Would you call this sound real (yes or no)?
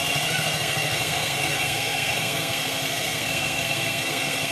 no